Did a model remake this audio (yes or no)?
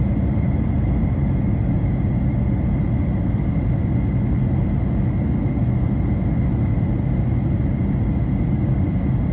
no